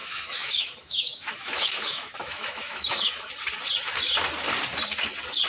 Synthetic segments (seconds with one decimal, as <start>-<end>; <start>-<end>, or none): 0.0-3.3

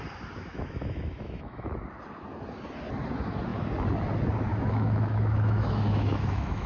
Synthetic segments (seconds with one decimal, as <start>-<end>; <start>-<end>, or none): 0.5-1.7; 4.5-6.7

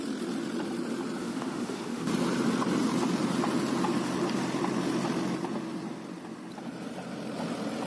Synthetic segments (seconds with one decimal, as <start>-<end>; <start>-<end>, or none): 1.2-2.1

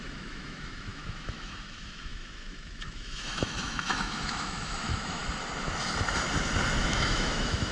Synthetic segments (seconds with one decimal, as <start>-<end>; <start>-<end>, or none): 0.0-5.2; 6.8-7.7